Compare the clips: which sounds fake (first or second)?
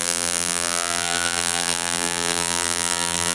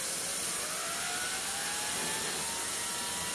first